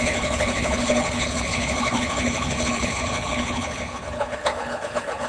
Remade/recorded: remade